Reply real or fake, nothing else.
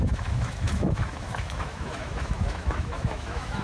fake